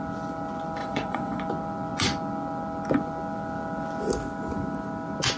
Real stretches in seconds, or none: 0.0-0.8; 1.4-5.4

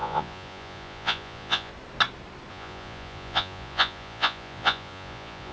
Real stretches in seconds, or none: 1.7-2.5

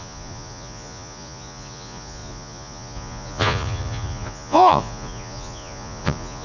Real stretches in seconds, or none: none

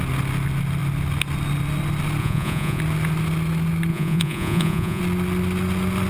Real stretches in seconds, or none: 0.0-2.2; 2.8-3.9; 5.0-6.1